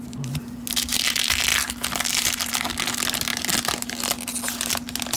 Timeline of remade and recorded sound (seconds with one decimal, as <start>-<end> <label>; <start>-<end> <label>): 0.0-5.2 recorded